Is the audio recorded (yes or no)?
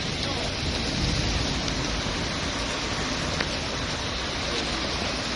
yes